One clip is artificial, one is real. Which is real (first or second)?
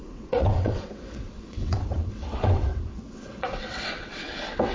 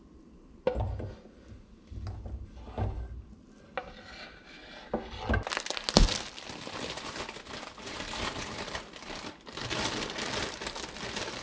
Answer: second